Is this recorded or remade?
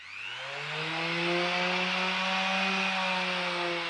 recorded